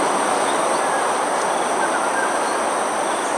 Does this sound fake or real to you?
real